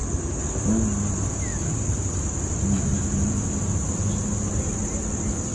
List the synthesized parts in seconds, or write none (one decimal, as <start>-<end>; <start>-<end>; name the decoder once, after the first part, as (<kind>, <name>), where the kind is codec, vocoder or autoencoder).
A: none